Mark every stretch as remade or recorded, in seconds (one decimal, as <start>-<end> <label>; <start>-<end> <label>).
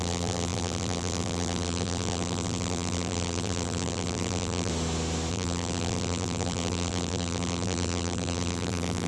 0.0-4.7 remade; 4.7-5.3 recorded; 5.3-9.1 remade